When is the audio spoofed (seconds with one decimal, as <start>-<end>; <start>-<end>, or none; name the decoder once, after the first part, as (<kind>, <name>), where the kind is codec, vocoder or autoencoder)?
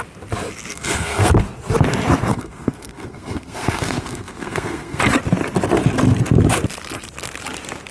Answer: 0.7-1.3 (codec, SNAC); 2.3-5.0